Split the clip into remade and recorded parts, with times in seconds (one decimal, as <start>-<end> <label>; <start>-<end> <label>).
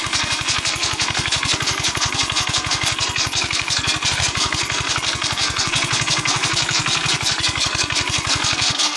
0.0-9.0 remade